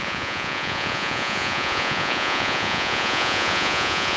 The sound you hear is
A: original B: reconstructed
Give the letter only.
B